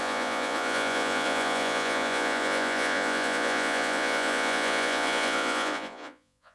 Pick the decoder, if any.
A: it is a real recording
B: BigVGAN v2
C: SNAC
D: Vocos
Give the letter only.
D